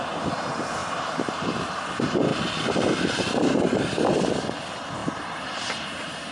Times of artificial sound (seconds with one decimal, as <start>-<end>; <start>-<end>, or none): 0.0-2.3; 3.2-6.3

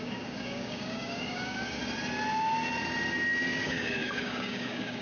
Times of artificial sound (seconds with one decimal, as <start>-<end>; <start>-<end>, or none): 0.0-1.8; 3.5-5.0

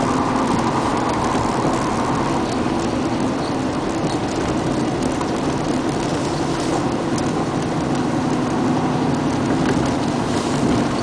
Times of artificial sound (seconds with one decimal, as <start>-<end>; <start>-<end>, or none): none

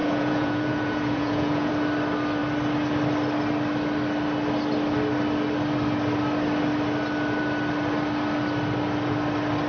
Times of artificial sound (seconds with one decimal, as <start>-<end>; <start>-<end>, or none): 0.0-1.7